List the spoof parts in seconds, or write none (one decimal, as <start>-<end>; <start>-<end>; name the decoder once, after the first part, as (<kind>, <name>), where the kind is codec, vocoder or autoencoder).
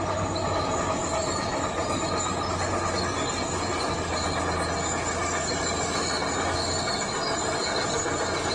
none